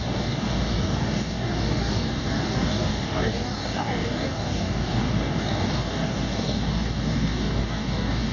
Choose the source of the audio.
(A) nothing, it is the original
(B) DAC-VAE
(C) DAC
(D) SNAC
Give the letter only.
C